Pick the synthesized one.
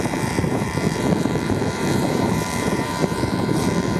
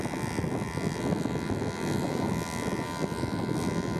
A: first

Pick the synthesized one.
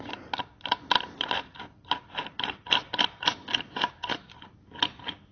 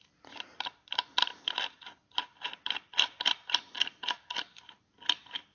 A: second